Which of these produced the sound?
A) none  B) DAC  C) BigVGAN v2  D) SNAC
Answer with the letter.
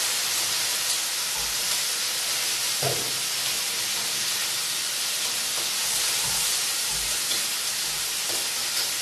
A